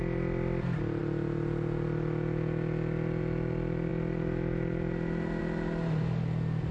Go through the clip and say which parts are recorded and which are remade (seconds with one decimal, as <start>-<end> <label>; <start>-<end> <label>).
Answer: 0.0-6.7 recorded

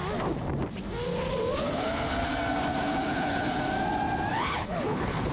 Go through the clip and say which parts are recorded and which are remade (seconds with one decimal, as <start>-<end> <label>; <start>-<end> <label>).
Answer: 0.0-1.6 recorded; 1.6-2.3 remade; 2.3-3.0 recorded; 3.0-3.6 remade; 3.6-4.3 recorded; 4.3-5.3 remade

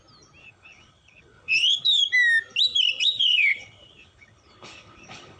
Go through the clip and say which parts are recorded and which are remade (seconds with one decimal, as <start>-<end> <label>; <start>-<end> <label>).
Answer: 0.0-0.4 recorded; 0.4-2.0 remade; 2.0-3.0 recorded; 3.0-5.4 remade